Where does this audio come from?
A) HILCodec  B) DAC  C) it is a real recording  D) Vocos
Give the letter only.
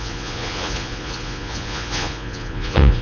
D